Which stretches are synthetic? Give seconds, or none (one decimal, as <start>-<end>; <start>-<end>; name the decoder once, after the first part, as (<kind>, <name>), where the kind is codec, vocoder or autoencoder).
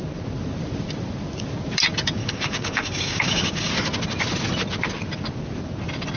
2.2-3.7 (codec, DAC)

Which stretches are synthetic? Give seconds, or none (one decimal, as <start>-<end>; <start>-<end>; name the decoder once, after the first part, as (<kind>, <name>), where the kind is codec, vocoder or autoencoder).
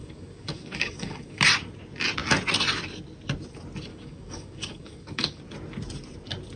0.0-1.4 (codec, DAC); 3.9-5.4